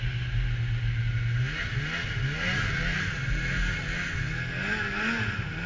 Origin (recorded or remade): recorded